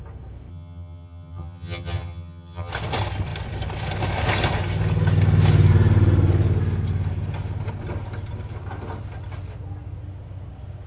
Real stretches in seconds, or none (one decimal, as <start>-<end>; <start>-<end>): 0.0-0.5; 2.7-10.9